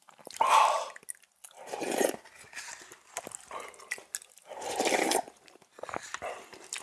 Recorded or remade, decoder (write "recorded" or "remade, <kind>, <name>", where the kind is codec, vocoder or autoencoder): recorded